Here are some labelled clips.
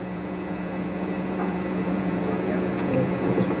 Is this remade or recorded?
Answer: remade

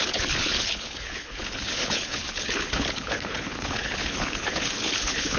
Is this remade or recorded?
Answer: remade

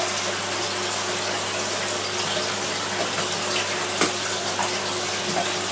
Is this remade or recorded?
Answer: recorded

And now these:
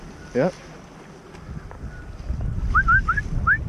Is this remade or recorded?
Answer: recorded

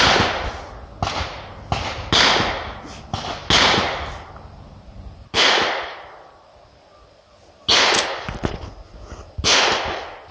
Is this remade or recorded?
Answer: recorded